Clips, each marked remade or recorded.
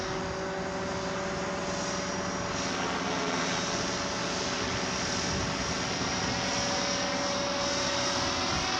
recorded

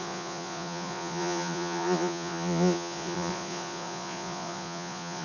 remade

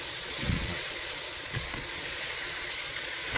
remade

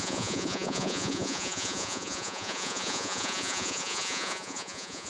remade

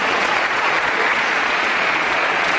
remade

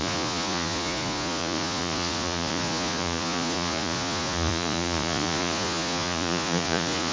remade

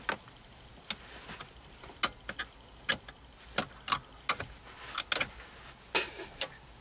recorded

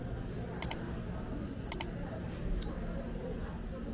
recorded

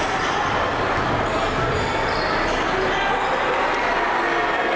recorded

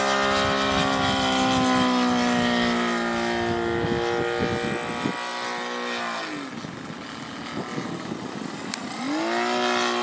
recorded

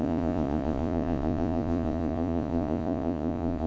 remade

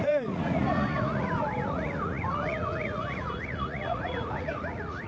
remade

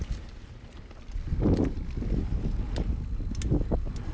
recorded